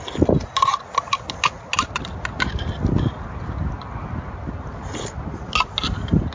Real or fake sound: real